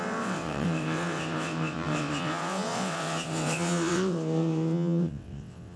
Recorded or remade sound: remade